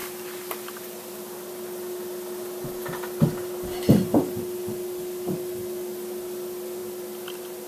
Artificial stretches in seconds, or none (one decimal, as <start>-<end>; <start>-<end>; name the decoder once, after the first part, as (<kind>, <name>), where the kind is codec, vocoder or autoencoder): none